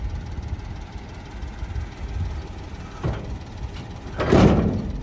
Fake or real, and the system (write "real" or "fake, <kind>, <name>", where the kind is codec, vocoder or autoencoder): real